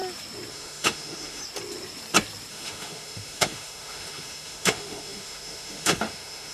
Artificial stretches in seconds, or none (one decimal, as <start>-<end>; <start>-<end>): 0.5-1.4; 2.5-6.5